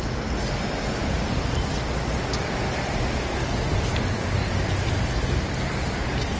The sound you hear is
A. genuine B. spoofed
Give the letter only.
A